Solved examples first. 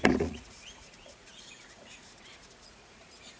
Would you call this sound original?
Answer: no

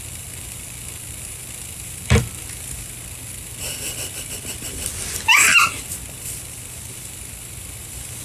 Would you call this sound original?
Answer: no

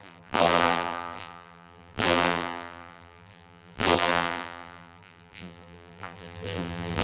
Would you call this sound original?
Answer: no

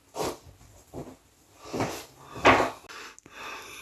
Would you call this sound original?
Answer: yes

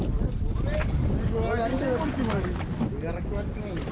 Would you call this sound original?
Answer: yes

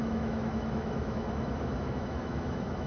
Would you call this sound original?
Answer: no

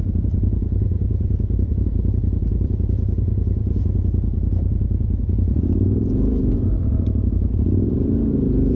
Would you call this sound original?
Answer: no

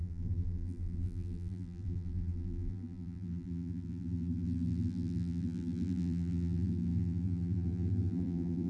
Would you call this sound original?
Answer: no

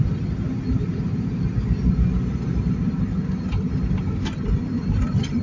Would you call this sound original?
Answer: yes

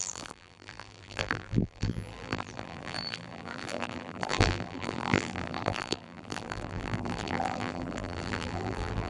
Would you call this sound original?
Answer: no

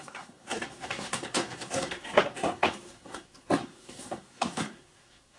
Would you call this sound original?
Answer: no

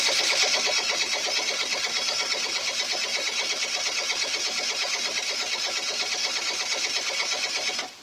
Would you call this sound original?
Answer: yes